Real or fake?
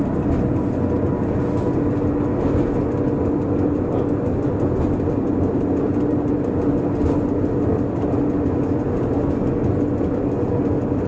real